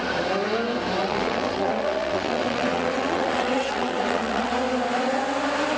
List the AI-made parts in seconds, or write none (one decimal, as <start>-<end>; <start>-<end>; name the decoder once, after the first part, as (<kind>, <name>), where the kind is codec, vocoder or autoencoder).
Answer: 1.0-4.5 (vocoder, WaveNeXt)